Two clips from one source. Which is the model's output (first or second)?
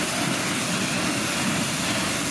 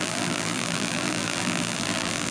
second